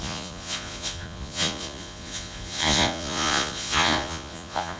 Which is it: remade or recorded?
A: remade